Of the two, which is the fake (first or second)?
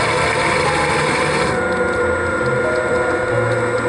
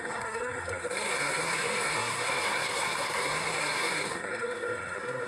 second